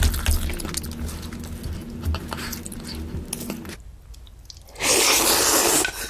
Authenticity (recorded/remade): recorded